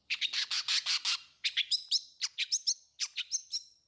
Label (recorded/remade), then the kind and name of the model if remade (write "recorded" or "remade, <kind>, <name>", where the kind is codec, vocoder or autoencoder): recorded